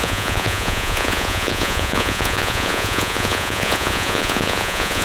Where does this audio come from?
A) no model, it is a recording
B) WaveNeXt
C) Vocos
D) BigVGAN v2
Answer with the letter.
C